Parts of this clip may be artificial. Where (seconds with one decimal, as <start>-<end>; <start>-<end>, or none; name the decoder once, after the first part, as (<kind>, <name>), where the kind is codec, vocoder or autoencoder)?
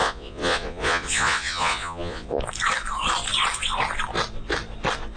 0.0-2.4 (vocoder, Vocos)